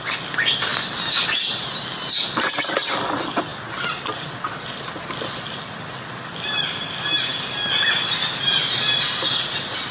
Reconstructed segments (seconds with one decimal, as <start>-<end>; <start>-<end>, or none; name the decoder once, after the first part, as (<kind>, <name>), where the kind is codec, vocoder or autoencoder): none